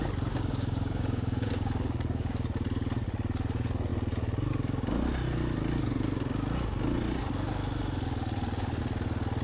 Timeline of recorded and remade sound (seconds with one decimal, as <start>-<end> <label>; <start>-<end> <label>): 0.0-0.5 recorded; 0.5-2.3 remade; 2.3-9.4 recorded